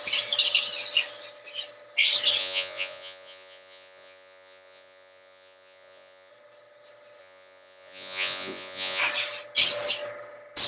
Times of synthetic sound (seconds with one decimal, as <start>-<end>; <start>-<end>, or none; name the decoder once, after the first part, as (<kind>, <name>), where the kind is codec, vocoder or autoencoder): 2.4-6.3 (vocoder, Vocos); 7.2-9.0